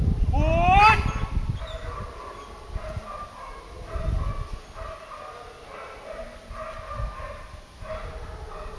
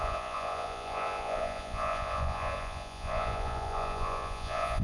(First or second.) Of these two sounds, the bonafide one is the first